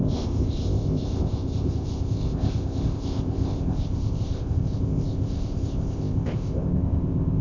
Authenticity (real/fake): fake